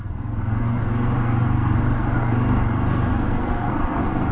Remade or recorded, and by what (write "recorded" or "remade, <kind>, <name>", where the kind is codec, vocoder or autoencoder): remade, codec, SNAC